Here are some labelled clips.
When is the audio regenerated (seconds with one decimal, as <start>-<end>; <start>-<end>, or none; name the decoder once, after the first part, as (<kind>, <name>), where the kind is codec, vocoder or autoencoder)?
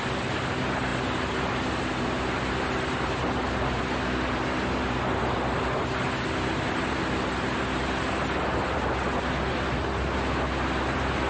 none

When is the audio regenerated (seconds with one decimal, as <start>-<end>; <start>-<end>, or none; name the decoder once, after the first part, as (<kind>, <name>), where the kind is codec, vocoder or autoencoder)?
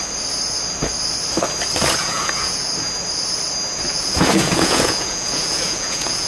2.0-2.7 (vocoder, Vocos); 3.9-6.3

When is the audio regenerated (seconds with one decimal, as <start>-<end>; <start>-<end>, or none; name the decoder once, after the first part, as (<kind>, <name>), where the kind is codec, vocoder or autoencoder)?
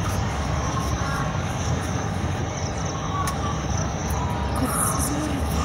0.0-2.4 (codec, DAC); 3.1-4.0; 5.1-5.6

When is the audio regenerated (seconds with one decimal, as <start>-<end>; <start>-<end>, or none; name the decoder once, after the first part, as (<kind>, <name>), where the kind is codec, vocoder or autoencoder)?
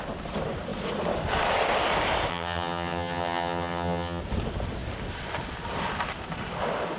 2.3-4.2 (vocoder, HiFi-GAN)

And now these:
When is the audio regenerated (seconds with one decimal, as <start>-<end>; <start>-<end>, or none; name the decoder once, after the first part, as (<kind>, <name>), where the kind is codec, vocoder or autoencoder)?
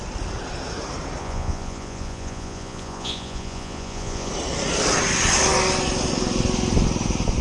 1.2-4.3 (vocoder, Vocos)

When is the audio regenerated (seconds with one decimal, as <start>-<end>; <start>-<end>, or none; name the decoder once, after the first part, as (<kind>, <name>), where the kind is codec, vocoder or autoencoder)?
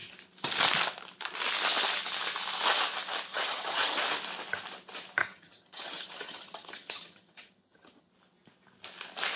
3.3-4.0 (vocoder, HiFi-GAN); 5.2-8.1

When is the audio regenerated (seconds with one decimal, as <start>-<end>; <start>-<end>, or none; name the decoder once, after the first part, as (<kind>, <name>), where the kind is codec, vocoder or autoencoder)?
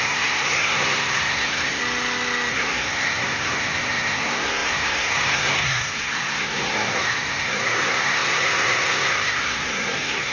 0.0-1.8 (codec, SNAC); 2.5-10.3